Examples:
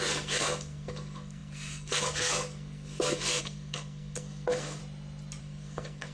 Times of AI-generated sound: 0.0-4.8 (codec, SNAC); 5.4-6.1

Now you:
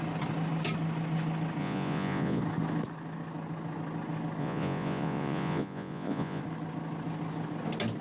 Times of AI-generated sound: 1.6-2.4 (vocoder, Vocos); 4.4-6.4

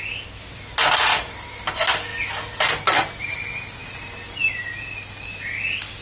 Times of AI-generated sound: none

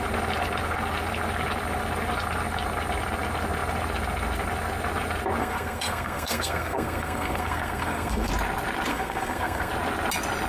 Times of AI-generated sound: 5.4-8.3 (codec, SNAC); 8.9-9.7

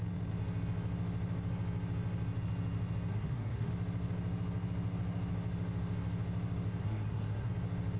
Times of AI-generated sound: 3.1-3.7 (codec, SNAC); 6.8-7.5